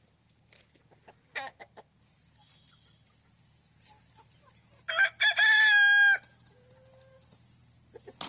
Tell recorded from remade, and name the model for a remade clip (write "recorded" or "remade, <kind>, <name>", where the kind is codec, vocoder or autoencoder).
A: recorded